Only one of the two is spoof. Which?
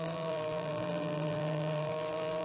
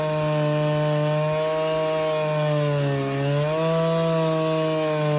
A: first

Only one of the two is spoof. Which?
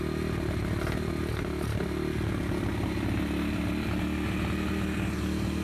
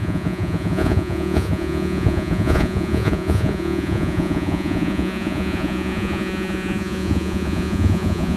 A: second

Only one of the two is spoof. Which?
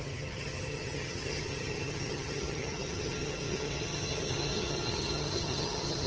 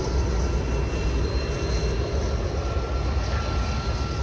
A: first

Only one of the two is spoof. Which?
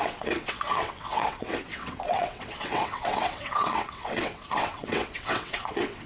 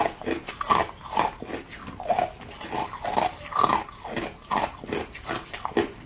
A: first